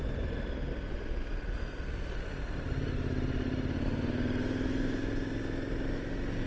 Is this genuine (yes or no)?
yes